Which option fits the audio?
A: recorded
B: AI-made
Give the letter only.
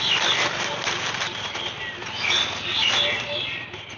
A